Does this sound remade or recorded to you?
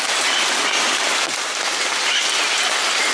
recorded